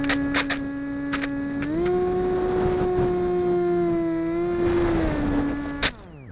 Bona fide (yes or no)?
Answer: yes